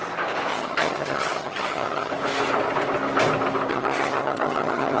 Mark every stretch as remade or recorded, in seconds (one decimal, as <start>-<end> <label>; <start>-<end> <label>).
0.0-0.5 recorded; 0.5-2.1 remade; 2.1-3.7 recorded; 3.7-5.0 remade